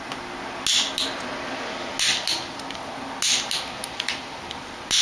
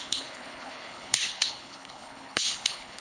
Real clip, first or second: first